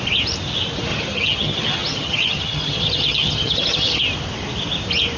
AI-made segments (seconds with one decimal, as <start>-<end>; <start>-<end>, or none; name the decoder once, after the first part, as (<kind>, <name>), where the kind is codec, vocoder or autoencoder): 0.9-4.0 (vocoder, HiFi-GAN)